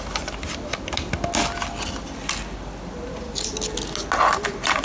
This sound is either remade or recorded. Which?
recorded